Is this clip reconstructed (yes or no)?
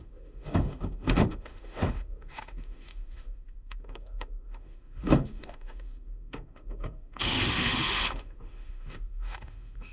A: yes